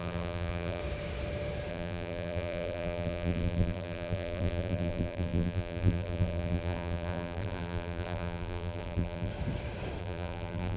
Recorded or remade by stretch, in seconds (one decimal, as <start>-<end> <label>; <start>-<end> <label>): 0.0-0.8 remade; 0.8-1.7 recorded; 1.7-9.3 remade; 9.3-10.0 recorded; 10.0-10.8 remade

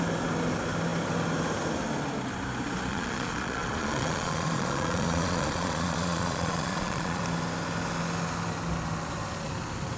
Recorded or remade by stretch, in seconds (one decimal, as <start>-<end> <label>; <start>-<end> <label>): 0.0-2.9 recorded; 2.9-7.2 remade; 7.2-10.0 recorded

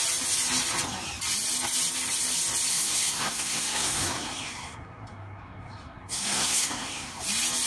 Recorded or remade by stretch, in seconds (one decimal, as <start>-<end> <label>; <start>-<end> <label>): 0.0-2.7 recorded; 2.7-7.2 remade; 7.2-7.7 recorded

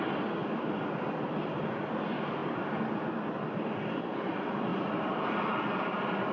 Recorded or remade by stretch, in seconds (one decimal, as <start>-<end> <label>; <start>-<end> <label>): 0.0-2.4 remade; 2.4-3.3 recorded; 3.3-6.3 remade